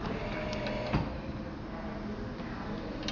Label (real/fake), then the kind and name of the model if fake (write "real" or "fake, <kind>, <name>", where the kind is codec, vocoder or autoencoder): real